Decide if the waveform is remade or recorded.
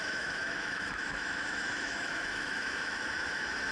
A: remade